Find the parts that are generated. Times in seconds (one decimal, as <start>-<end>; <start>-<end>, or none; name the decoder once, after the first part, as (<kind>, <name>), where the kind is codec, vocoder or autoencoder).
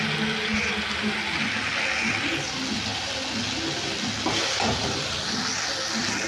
none